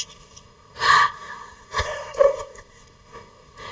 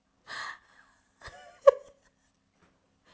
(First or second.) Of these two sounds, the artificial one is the first